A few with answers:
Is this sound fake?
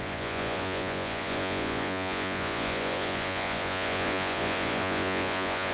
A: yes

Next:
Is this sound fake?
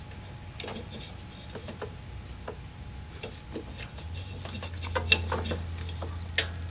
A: no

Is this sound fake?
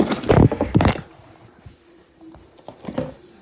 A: no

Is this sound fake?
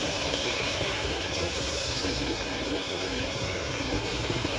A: yes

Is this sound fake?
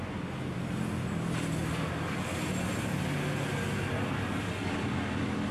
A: no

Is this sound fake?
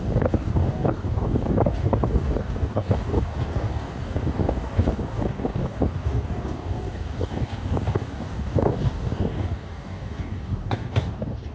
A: yes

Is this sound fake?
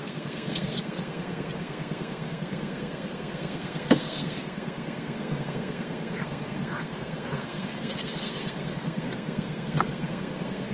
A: yes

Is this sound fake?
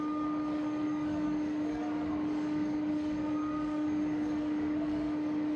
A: yes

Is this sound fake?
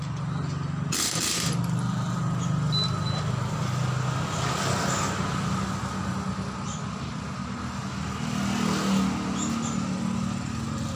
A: no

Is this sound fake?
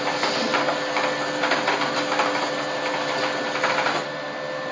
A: yes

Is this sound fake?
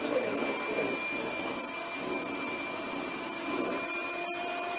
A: no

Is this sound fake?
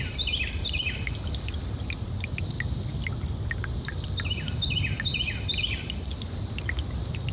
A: no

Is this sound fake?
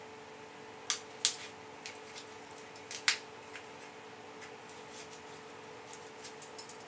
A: no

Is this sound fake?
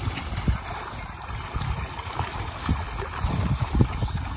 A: no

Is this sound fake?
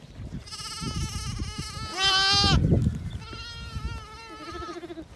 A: no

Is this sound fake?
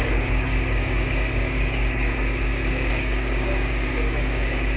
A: yes